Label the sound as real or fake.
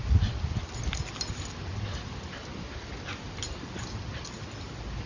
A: real